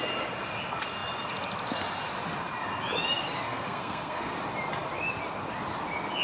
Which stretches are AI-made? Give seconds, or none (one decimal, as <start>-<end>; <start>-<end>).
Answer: 3.2-4.3